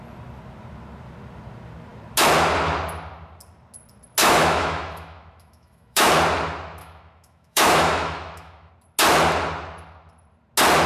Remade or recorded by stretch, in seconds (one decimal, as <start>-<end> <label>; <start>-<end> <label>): 0.0-4.2 recorded; 4.2-6.1 remade; 6.1-6.8 recorded; 6.8-8.7 remade; 8.7-10.9 recorded